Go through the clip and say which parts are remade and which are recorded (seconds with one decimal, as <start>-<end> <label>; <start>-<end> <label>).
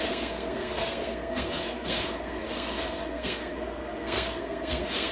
0.0-5.1 remade